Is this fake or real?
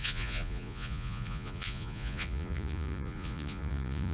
fake